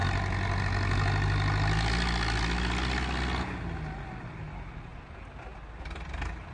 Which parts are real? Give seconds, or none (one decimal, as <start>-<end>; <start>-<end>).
0.0-6.5